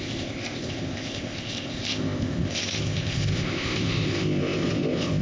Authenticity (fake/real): fake